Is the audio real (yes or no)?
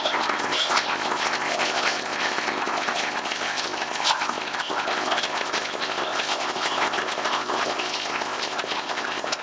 no